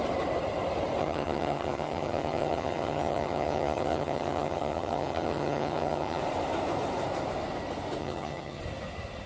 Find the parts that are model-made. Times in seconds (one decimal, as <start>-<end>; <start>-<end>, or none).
1.0-6.2; 8.0-8.6